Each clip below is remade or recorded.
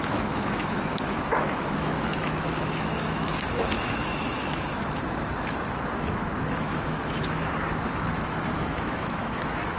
remade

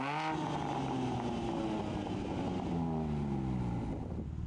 recorded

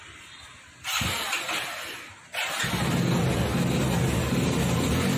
recorded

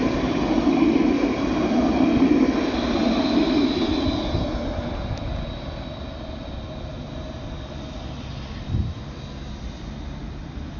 recorded